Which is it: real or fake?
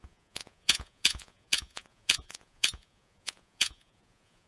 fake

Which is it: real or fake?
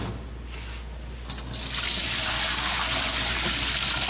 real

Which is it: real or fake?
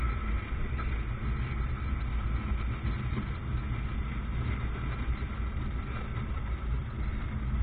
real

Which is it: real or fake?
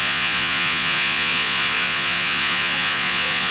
fake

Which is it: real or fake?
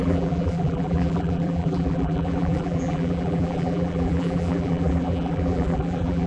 fake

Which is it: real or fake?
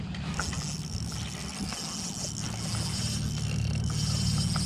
real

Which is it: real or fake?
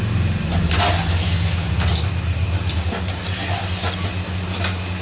real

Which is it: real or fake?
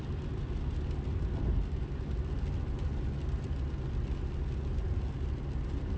real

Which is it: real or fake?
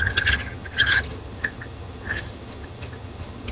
fake